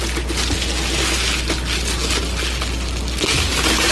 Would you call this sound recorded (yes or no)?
yes